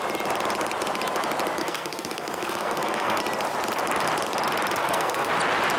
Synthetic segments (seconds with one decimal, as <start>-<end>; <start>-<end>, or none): 1.6-3.2; 4.8-5.3